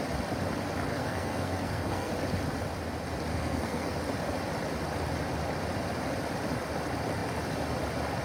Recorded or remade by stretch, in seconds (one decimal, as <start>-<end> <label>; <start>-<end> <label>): 0.0-0.9 recorded; 0.9-2.1 remade; 2.1-3.3 recorded; 3.3-4.0 remade; 4.0-8.2 recorded